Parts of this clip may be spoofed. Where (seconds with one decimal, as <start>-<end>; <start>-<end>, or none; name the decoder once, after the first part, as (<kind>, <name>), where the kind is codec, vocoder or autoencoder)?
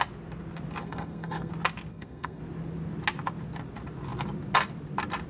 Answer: 0.8-1.5 (codec, SNAC); 1.9-2.4